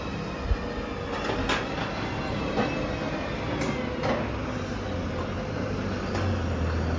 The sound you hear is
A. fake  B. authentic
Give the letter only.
B